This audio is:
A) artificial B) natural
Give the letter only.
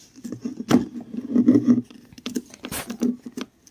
B